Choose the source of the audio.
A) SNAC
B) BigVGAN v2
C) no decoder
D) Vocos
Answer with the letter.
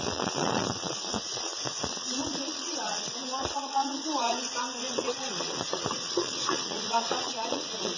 D